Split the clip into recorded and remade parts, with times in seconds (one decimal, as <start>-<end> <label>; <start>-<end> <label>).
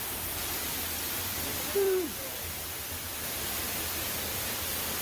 0.0-1.5 recorded; 1.5-4.5 remade; 4.5-5.0 recorded